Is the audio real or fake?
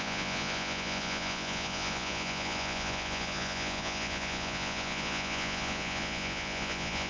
fake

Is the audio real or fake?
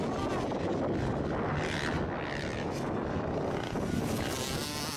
real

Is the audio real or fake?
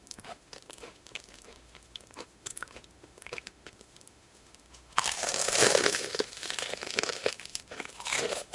fake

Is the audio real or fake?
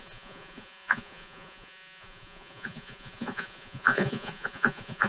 fake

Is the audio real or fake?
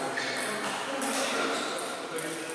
real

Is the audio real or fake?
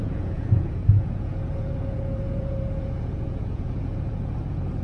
fake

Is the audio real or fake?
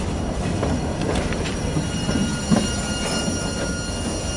real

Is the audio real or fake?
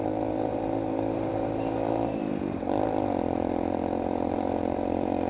fake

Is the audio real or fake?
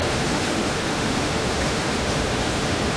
fake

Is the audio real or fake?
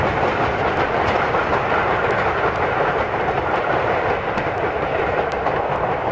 real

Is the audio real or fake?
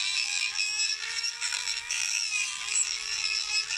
fake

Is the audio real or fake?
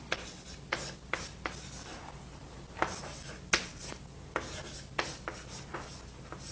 real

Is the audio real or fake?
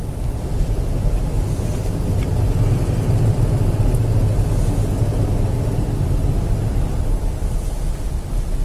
real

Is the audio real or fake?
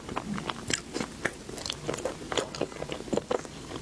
real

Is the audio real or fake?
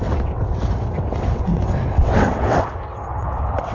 fake